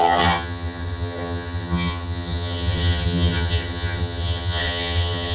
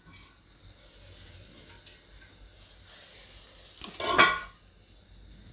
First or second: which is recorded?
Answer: second